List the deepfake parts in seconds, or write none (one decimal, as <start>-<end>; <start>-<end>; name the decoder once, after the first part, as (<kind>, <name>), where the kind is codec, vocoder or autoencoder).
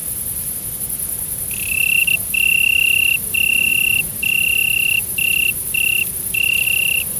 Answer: none